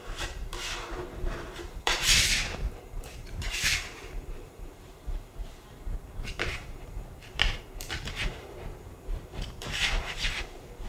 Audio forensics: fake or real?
fake